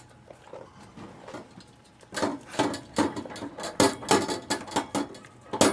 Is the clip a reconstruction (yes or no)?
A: no